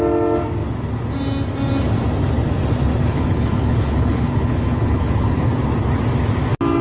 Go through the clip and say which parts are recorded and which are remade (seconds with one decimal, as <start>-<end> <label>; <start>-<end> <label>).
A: 0.0-3.1 recorded; 3.1-5.5 remade; 5.5-6.8 recorded